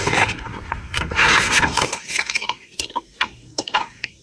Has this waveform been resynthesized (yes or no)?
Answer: yes